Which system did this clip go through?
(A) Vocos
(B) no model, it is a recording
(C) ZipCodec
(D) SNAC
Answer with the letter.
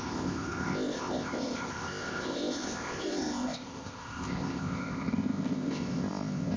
C